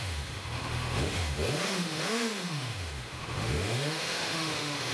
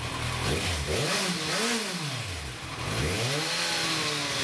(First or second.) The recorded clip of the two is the second